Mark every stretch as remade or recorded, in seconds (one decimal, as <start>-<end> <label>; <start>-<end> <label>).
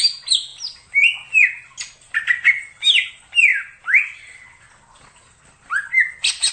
0.0-6.5 recorded